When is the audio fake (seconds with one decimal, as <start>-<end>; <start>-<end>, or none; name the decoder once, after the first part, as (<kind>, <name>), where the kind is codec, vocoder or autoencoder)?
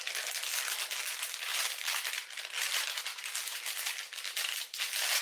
3.1-4.8 (vocoder, BigVGAN v2)